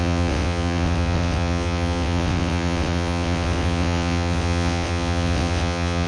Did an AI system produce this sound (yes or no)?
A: yes